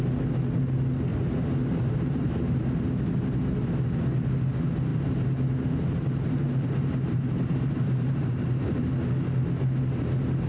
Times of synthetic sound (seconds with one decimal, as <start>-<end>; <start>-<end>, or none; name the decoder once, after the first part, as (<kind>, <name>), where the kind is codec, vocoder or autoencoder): 1.1-2.6 (vocoder, BigVGAN v2); 4.9-8.9